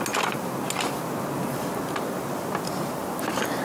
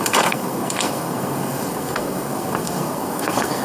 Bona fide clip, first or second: first